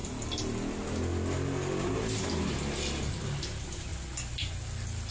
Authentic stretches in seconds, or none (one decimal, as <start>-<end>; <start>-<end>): 0.0-3.1; 3.9-5.1